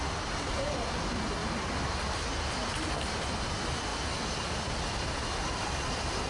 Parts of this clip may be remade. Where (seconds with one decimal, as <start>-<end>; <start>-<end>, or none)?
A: 0.0-1.4; 3.2-3.9; 4.9-6.3